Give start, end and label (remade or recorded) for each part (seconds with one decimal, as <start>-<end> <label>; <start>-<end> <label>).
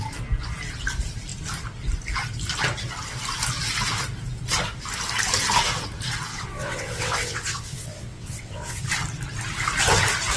0.0-6.3 recorded; 6.3-8.8 remade; 8.8-10.4 recorded